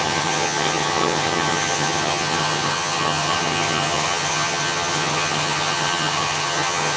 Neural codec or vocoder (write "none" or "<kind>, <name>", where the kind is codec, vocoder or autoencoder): vocoder, HiFi-GAN